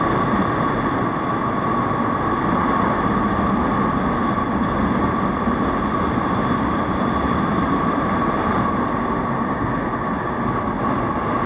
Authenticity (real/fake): real